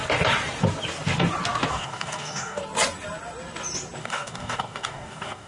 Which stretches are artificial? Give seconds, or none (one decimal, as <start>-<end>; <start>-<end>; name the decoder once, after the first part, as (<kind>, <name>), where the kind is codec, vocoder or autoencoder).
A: 1.7-2.6 (codec, DAC); 4.0-5.5